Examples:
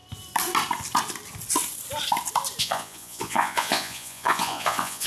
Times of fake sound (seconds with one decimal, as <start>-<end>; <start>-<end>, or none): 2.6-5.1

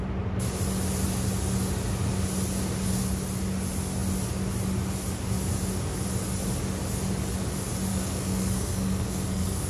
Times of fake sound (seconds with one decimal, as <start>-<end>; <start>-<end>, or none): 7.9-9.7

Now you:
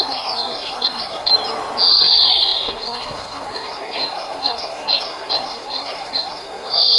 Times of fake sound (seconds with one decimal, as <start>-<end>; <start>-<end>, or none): 0.0-1.3; 1.9-7.0

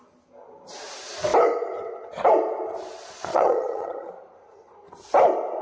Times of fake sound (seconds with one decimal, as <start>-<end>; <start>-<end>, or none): 3.3-4.1

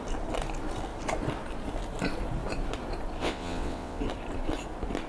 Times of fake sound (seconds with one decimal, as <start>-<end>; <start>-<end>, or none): 3.2-4.0

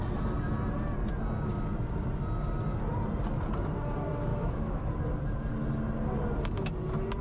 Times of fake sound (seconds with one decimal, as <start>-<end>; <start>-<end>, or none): 4.3-4.9

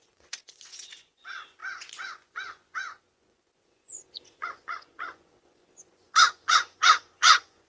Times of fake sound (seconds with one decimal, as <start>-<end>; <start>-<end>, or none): 0.0-7.7